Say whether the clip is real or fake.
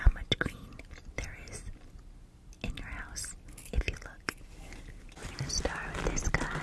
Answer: real